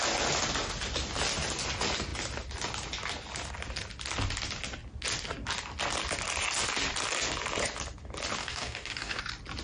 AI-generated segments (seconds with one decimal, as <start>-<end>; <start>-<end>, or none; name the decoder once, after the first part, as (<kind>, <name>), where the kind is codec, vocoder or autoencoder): 8.4-9.2 (codec, DAC)